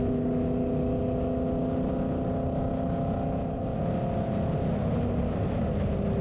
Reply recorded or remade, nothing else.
recorded